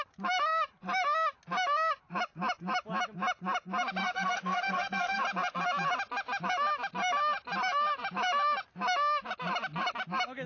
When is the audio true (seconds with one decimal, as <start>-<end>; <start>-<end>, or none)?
0.0-4.0; 5.2-10.5